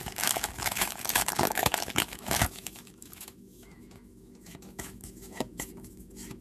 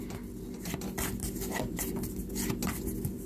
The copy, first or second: first